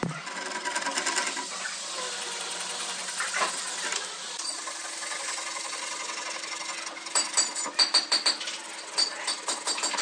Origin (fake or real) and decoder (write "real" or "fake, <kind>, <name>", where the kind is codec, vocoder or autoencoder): real